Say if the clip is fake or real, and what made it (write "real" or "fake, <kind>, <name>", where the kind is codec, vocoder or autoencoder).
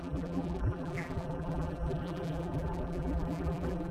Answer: fake, vocoder, BigVGAN v2